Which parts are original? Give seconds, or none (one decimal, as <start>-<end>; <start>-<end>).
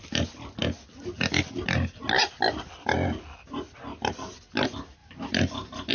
0.0-5.0